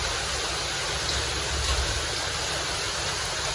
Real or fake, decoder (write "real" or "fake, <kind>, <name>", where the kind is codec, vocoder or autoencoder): real